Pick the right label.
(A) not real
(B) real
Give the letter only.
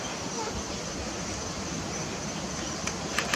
B